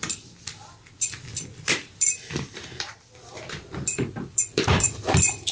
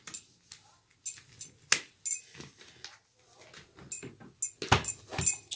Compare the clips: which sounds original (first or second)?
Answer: second